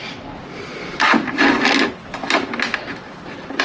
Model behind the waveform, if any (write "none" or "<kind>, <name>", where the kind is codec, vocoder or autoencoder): none